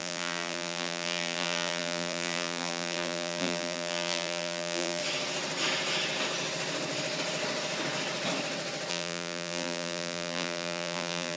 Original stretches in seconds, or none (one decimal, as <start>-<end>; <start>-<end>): 5.0-8.9